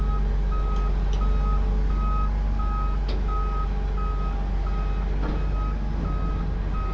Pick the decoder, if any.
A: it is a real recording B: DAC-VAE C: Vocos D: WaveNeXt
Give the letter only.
A